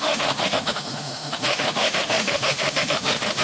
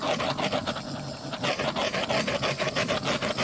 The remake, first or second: first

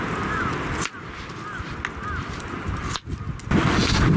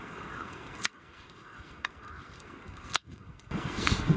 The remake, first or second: second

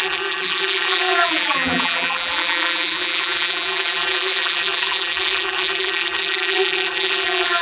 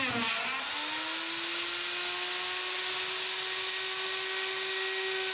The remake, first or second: first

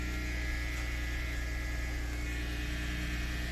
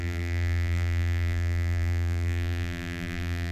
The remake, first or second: second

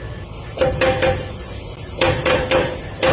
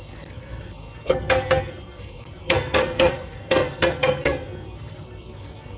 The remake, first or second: second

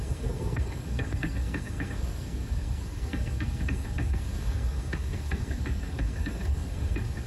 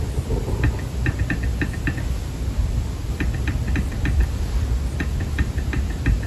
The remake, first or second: first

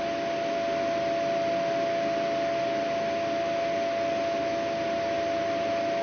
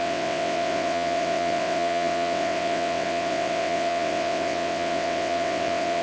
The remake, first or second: second